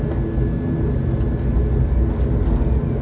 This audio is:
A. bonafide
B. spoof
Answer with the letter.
A